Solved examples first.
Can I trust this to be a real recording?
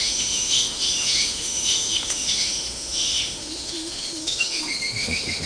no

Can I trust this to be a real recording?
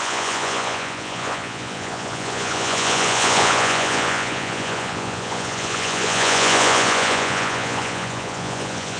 no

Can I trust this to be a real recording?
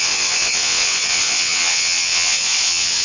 no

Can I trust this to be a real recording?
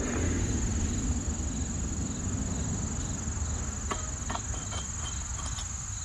yes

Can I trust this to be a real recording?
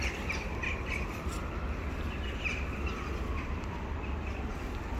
yes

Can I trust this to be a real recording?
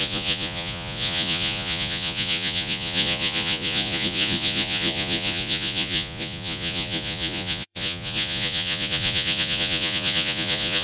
no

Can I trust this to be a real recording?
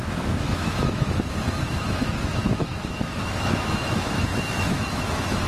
no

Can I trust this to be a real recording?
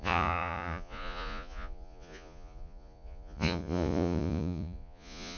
no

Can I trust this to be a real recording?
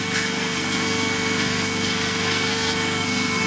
no